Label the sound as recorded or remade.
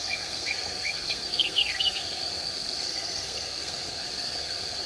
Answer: remade